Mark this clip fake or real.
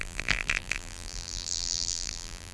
fake